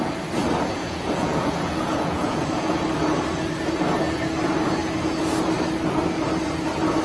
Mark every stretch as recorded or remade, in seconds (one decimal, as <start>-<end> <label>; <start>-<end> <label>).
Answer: 0.0-0.8 recorded; 0.8-2.8 remade; 2.8-7.0 recorded